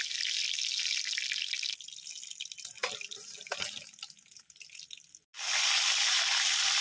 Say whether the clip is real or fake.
real